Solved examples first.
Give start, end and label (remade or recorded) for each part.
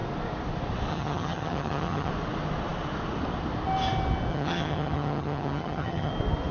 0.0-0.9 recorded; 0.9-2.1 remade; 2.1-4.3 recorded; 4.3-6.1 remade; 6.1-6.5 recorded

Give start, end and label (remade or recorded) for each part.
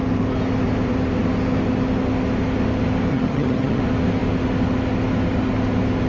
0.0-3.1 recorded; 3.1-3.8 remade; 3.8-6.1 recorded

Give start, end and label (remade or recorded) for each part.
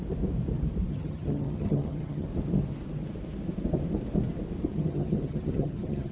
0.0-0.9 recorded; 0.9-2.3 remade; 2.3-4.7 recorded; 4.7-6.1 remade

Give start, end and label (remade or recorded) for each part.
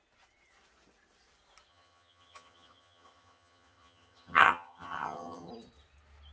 0.0-1.7 recorded; 1.7-5.5 remade; 5.5-6.3 recorded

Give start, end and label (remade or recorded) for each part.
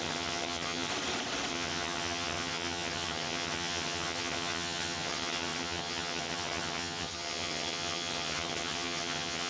0.0-0.9 remade; 0.9-1.5 recorded; 1.5-9.5 remade